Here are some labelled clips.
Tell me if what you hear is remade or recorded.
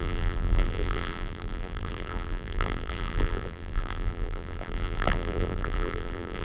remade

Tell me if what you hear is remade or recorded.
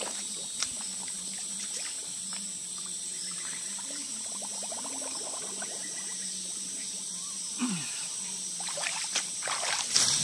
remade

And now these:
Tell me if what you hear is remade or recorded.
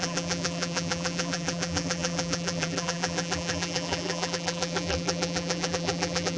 remade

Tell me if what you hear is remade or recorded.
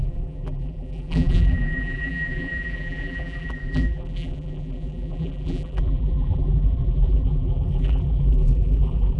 remade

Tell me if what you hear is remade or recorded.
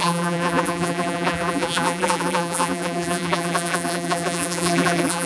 remade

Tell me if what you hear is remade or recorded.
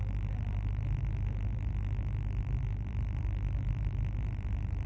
remade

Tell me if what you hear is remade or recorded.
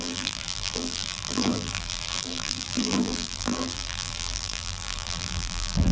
remade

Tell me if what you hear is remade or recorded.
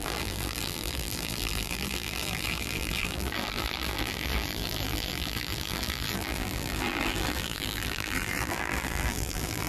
remade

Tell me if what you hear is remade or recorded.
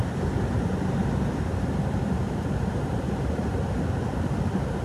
recorded